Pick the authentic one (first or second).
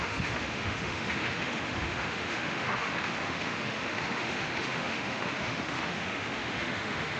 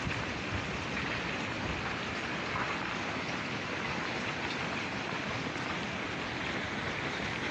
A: second